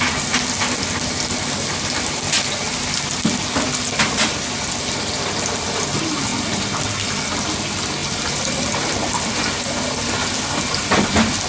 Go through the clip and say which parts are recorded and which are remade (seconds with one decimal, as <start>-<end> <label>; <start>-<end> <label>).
0.0-8.0 recorded; 8.0-9.3 remade; 9.3-11.5 recorded